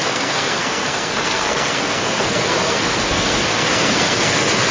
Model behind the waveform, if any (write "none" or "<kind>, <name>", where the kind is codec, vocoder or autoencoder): codec, SNAC